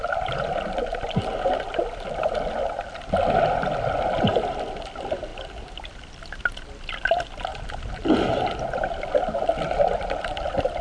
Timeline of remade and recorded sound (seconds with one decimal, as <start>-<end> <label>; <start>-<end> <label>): 0.0-7.5 recorded; 7.5-8.3 remade; 8.3-10.8 recorded